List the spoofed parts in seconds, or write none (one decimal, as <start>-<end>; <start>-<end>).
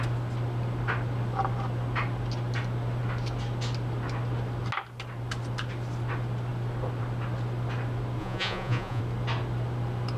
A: 8.2-9.0